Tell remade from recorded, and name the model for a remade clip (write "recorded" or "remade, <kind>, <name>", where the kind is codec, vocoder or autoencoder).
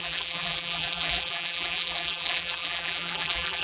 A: remade, vocoder, BigVGAN v2